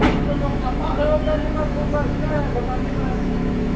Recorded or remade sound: remade